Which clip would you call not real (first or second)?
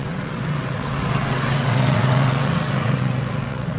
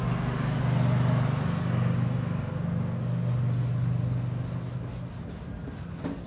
first